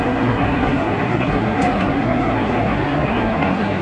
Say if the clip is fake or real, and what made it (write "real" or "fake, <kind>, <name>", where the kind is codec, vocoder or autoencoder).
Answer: fake, codec, SNAC